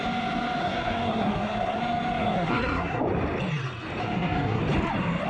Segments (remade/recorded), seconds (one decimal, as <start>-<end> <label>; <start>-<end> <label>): 0.0-0.6 recorded; 0.6-1.8 remade; 1.8-2.2 recorded; 2.2-3.0 remade; 3.0-4.0 recorded; 4.0-4.6 remade; 4.6-5.3 recorded